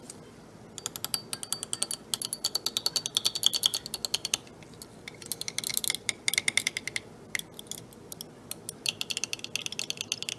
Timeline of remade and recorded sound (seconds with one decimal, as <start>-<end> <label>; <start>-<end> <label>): 0.0-10.4 recorded